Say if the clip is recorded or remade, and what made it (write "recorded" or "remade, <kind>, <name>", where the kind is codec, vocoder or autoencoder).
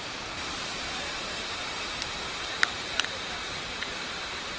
remade, vocoder, BigVGAN v2